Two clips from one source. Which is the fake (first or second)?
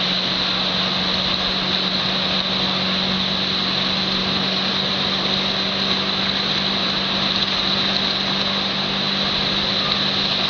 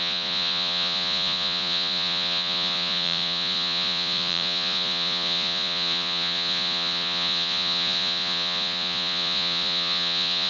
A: second